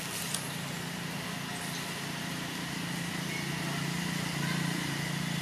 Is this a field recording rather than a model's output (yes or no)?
yes